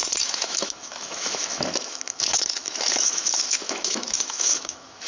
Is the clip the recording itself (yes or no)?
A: no